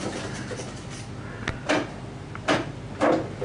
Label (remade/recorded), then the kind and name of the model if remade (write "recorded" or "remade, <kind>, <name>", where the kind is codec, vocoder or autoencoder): recorded